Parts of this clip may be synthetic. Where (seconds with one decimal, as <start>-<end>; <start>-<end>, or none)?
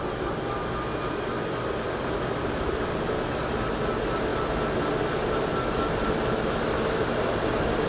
none